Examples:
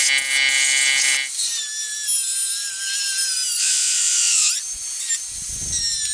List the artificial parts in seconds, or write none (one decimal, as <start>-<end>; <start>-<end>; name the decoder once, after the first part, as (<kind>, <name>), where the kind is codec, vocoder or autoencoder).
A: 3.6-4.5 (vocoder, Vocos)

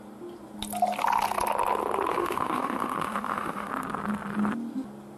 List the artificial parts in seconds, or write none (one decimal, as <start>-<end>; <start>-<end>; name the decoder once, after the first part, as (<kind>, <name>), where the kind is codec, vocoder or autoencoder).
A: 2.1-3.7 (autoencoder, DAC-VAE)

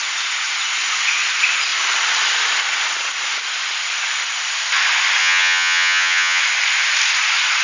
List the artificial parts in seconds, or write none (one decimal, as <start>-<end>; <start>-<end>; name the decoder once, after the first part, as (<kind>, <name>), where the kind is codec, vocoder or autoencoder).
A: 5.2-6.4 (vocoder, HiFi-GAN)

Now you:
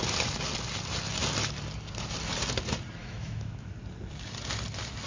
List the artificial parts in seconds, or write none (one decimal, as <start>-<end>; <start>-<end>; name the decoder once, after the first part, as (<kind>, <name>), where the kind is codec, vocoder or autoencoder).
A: 3.0-3.7 (autoencoder, DAC-VAE)

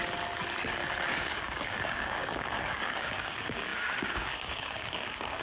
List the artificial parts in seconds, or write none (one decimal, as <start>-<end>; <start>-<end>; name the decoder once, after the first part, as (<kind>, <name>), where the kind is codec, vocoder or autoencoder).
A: 1.1-5.4 (codec, DAC)